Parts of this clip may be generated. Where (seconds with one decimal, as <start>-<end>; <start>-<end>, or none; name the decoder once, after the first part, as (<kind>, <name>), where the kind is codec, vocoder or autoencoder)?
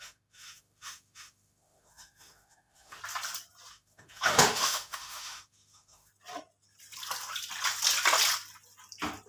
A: 0.0-3.0 (autoencoder, DAC-VAE); 3.7-6.1